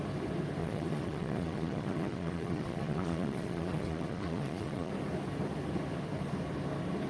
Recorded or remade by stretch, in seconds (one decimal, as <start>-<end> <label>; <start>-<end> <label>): 0.0-0.6 recorded; 0.6-4.9 remade; 4.9-7.1 recorded

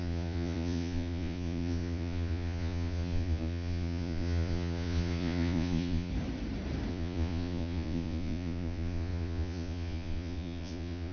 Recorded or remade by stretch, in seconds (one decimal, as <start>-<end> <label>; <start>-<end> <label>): 0.0-6.1 remade; 6.1-6.9 recorded; 6.9-11.1 remade